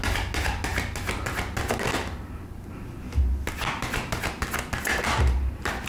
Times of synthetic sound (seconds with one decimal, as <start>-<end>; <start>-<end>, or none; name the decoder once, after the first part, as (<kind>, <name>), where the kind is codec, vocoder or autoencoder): none